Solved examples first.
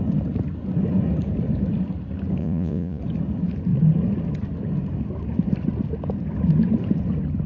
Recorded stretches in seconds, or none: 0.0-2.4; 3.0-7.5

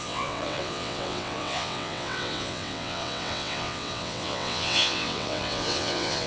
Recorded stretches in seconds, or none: none